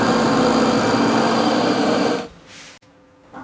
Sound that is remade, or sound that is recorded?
recorded